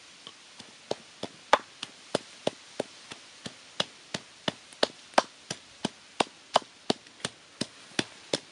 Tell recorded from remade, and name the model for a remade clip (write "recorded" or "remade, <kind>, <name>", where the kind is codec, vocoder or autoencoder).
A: recorded